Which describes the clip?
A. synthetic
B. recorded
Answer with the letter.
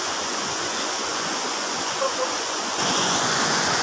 A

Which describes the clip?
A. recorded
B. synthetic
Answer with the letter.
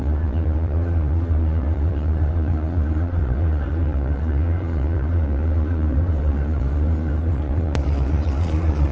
B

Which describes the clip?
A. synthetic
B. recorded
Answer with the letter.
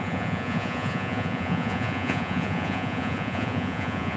A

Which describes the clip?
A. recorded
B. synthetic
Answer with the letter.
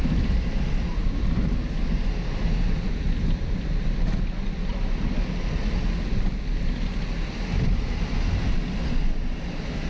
A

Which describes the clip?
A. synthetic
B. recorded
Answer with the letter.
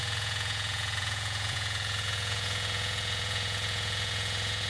A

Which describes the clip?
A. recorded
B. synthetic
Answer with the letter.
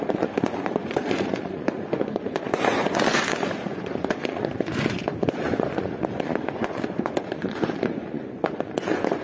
B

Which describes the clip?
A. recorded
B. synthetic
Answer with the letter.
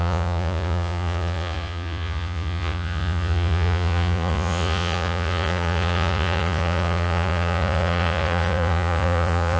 B